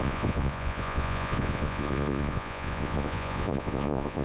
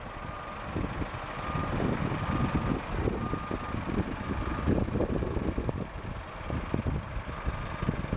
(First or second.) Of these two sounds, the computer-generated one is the first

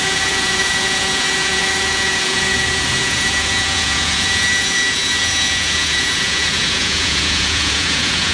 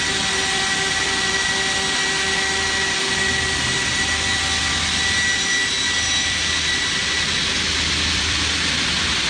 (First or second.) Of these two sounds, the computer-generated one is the first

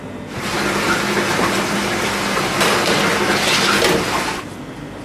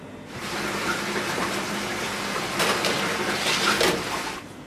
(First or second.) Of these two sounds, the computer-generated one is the second